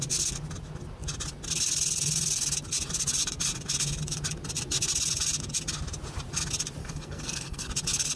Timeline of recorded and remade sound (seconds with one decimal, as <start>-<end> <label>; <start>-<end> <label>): 0.0-6.8 recorded; 6.8-7.7 remade; 7.7-8.2 recorded